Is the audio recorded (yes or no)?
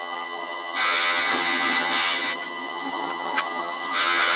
no